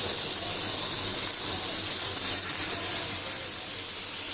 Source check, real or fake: real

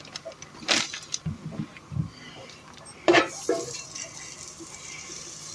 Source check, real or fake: fake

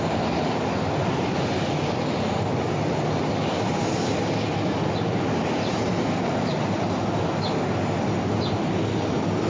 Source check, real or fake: real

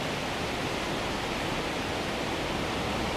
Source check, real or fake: real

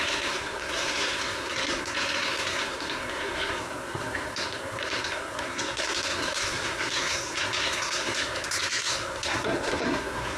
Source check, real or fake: fake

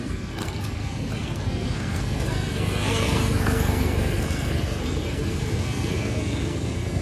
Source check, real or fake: fake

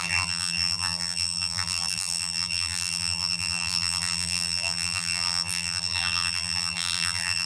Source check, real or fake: fake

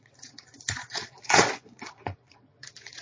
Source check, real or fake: fake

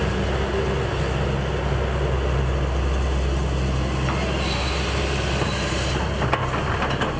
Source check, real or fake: real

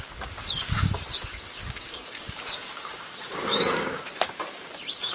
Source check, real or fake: fake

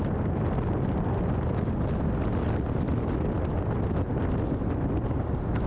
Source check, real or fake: real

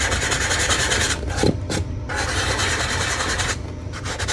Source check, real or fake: real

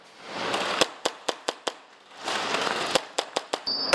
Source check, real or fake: fake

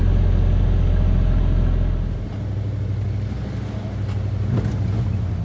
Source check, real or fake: real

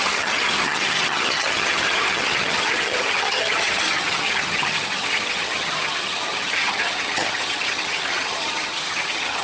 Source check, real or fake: fake